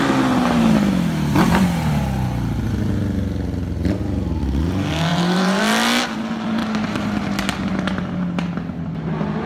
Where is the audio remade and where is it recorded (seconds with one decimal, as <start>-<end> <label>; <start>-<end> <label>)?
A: 0.0-5.1 recorded; 5.1-5.6 remade; 5.6-9.5 recorded